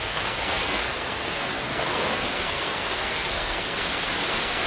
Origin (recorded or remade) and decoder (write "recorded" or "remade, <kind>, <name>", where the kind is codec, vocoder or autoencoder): remade, codec, SNAC